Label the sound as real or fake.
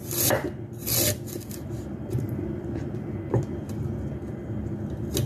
fake